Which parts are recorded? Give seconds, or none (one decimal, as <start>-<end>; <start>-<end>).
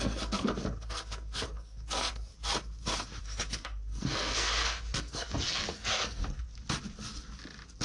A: 2.3-3.2; 6.5-7.8